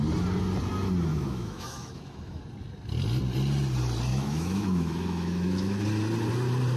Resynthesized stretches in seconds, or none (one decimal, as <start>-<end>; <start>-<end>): 1.1-2.4; 4.1-5.8